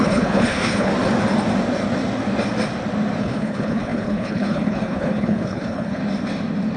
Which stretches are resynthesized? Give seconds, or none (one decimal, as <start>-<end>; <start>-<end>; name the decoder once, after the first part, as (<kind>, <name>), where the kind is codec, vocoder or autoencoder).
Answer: 0.0-0.9 (codec, HILCodec); 3.2-6.0